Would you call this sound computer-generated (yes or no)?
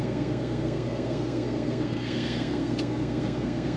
yes